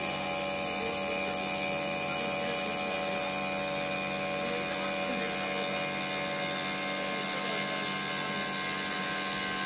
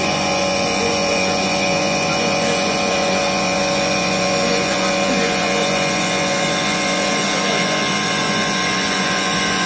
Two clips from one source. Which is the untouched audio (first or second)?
first